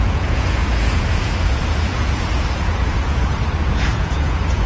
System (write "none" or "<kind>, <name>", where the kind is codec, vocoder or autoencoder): vocoder, Vocos